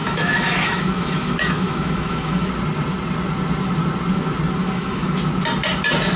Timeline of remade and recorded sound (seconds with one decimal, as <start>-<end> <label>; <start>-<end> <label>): 0.0-2.5 remade; 2.5-4.6 recorded; 4.6-5.2 remade; 5.2-6.2 recorded